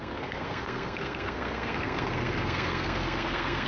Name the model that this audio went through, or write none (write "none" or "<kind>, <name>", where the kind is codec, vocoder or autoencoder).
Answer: codec, SNAC